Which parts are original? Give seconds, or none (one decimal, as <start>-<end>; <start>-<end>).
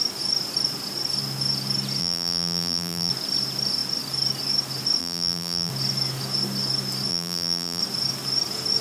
0.0-2.0; 3.1-5.0; 5.7-7.1; 7.8-8.8